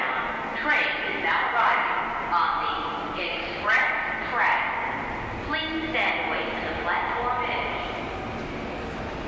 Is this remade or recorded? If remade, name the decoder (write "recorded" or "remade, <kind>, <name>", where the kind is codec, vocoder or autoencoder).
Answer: recorded